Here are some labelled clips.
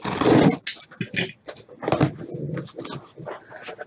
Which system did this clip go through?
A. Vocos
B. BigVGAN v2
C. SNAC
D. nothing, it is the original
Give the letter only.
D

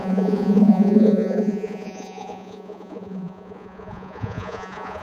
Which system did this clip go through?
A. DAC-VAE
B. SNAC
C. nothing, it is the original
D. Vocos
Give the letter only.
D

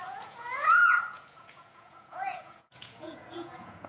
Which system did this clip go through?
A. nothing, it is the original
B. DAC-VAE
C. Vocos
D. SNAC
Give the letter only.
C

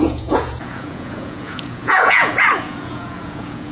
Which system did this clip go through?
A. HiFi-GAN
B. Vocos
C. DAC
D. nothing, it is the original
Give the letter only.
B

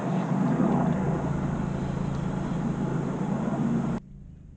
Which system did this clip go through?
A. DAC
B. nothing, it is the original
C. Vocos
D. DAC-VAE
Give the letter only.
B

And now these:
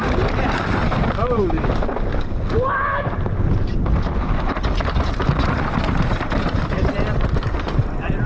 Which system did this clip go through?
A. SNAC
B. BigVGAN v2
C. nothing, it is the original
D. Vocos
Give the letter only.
C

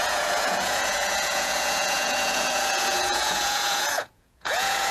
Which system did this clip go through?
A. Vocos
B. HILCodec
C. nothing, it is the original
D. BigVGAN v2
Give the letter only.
A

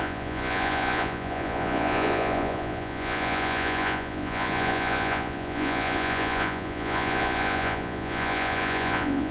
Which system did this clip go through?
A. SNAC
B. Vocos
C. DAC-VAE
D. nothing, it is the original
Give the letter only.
B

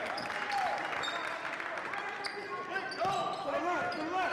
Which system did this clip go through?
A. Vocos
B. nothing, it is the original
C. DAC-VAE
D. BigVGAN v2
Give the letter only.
B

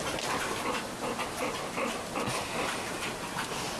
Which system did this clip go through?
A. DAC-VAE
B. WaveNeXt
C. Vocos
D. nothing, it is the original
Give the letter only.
D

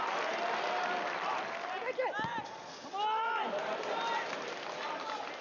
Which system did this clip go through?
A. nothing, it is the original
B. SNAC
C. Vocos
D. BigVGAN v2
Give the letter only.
A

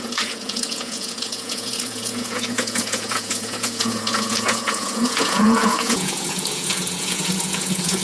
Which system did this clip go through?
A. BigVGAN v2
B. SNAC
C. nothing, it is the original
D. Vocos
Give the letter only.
D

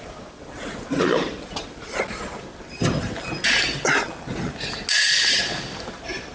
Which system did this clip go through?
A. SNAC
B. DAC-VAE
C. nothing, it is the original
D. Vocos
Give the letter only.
C